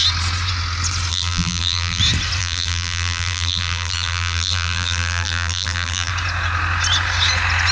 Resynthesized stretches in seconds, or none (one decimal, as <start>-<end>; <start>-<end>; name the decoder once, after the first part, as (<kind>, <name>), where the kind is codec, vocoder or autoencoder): 1.1-2.0 (vocoder, BigVGAN v2); 2.4-6.1